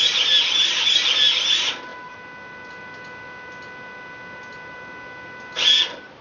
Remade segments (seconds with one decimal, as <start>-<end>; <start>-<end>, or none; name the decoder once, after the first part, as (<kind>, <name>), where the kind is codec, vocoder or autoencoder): none